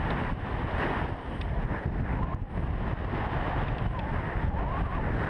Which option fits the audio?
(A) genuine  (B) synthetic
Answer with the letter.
A